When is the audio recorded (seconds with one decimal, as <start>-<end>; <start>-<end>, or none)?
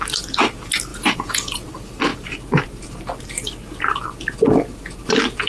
0.0-0.9; 1.7-5.5